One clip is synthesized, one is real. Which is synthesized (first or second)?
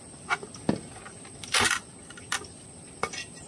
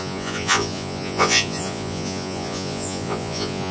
second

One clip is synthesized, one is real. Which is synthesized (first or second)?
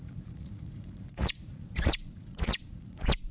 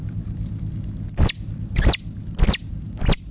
first